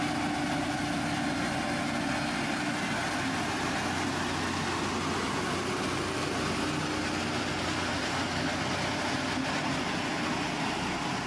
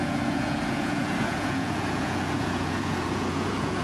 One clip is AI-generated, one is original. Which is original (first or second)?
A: first